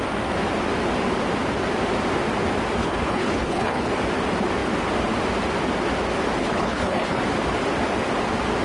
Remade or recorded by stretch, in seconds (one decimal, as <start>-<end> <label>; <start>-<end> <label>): 0.0-2.8 recorded; 2.8-3.9 remade; 3.9-6.4 recorded; 6.4-7.2 remade; 7.2-8.6 recorded